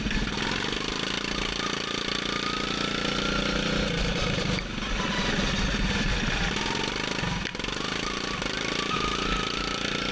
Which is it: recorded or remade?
recorded